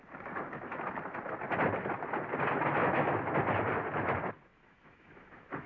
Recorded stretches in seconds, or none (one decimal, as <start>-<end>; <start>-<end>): 0.0-2.8; 3.3-4.5